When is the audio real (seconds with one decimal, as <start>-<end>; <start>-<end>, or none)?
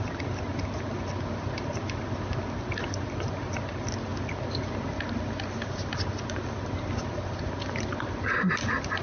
0.0-9.0